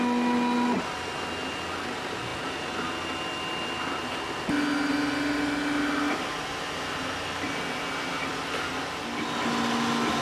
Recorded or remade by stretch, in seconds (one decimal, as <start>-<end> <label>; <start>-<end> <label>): 0.0-10.2 recorded

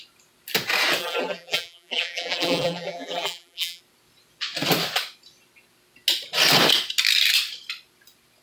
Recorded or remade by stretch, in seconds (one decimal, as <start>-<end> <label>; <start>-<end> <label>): 0.0-1.0 recorded; 1.0-3.8 remade; 3.8-8.4 recorded

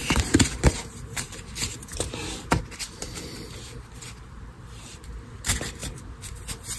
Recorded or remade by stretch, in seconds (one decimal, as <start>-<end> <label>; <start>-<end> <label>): 0.0-2.6 remade; 2.6-3.0 recorded; 3.0-4.6 remade; 4.6-6.8 recorded

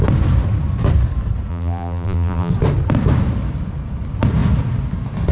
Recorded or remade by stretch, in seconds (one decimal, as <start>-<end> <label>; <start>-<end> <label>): 0.0-1.5 recorded; 1.5-2.5 remade; 2.5-5.3 recorded

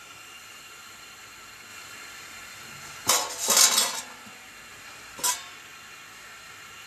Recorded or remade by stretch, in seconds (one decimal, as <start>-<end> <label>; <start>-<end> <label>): 0.0-1.7 recorded; 1.7-3.1 remade; 3.1-4.7 recorded; 4.7-5.3 remade; 5.3-6.9 recorded

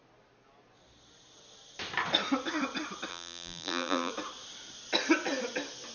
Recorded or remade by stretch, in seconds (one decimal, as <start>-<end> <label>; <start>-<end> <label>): 0.0-3.1 recorded; 3.1-4.1 remade; 4.1-5.9 recorded